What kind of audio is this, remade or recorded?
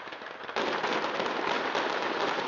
recorded